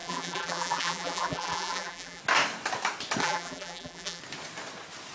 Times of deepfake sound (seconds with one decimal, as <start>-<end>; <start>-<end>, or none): 0.0-2.2; 3.2-4.2